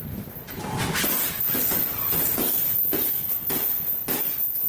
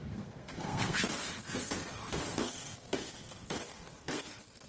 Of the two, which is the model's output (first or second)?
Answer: second